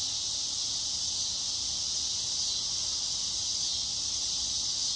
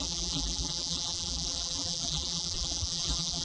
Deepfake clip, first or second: second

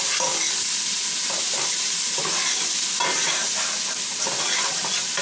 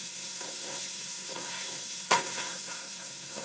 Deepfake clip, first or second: second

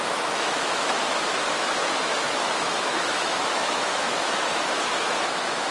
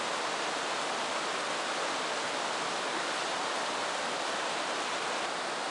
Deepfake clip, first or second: first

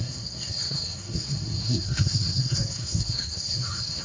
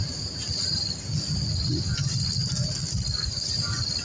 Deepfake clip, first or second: first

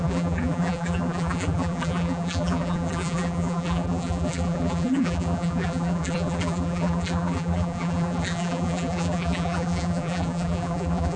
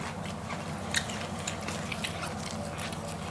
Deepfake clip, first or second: first